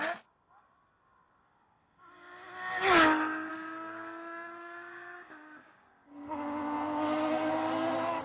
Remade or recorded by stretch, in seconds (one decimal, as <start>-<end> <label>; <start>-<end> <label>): 0.0-3.5 recorded; 3.5-5.9 remade; 5.9-8.2 recorded